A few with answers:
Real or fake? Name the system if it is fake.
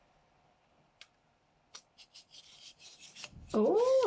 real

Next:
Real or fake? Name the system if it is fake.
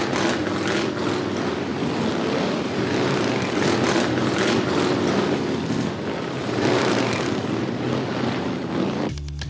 real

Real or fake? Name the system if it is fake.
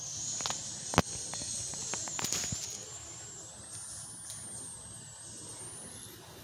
real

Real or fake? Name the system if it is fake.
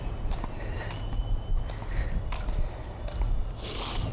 real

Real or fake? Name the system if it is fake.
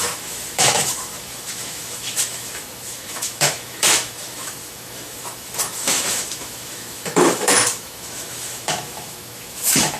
fake, autoencoder, DAC-VAE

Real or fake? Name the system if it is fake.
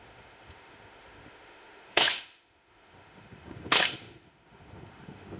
fake, autoencoder, DAC-VAE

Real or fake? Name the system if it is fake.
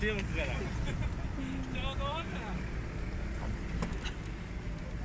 real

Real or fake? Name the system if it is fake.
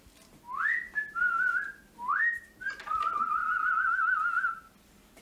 real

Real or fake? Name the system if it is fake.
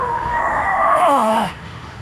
fake, autoencoder, DAC-VAE